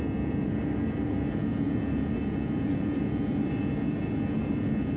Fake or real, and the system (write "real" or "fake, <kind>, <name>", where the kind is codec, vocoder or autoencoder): fake, vocoder, Vocos